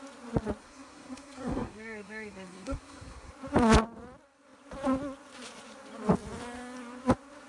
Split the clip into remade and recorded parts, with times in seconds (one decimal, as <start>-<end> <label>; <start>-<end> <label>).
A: 0.0-0.6 recorded; 0.6-3.3 remade; 3.3-7.5 recorded